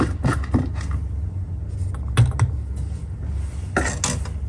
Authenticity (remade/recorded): recorded